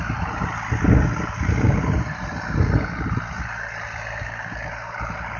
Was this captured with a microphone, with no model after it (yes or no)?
yes